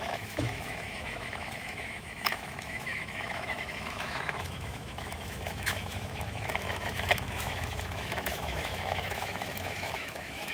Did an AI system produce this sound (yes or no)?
yes